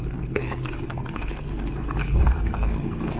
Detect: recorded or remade remade